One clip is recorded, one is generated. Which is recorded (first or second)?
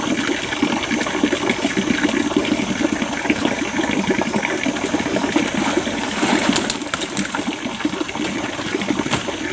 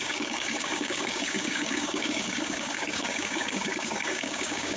first